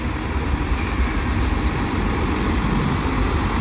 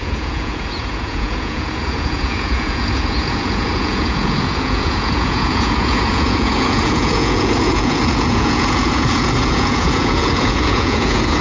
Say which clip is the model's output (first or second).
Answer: second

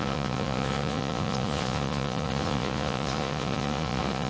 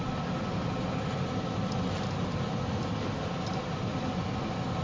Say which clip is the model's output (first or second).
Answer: first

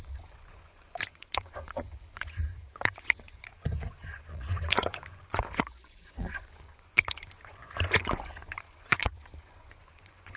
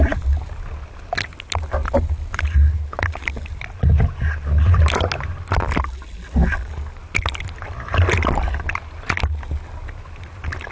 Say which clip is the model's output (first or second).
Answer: first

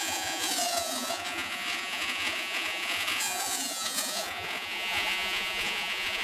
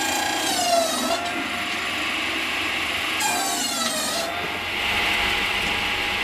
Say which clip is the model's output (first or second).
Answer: first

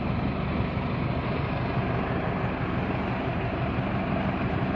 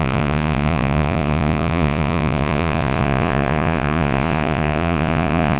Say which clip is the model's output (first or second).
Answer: second